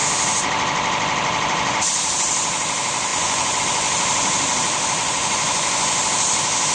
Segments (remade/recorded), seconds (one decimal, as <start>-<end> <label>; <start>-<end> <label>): 0.0-3.1 recorded; 3.1-3.6 remade; 3.6-5.0 recorded; 5.0-6.0 remade; 6.0-6.7 recorded